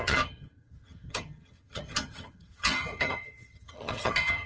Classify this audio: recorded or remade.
remade